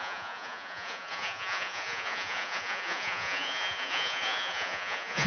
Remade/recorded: remade